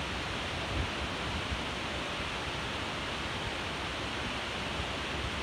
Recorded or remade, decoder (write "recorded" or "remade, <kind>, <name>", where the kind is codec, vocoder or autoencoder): recorded